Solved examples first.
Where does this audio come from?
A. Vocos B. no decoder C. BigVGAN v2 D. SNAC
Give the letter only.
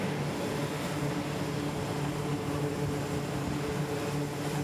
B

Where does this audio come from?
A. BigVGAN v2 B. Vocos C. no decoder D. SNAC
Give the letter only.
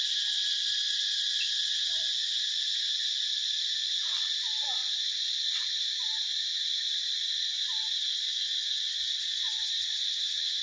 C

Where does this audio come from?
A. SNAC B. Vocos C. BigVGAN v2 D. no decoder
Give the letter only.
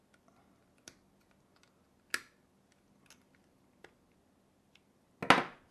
D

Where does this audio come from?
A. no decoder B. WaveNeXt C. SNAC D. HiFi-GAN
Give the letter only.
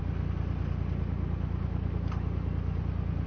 A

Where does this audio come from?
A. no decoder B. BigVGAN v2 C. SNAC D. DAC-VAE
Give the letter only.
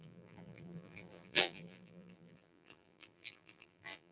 B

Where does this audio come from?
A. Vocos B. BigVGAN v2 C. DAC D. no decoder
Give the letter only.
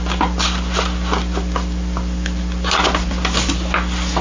D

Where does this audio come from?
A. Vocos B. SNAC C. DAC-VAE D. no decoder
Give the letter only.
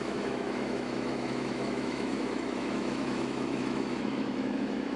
C